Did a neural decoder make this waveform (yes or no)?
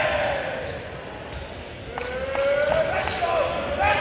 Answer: no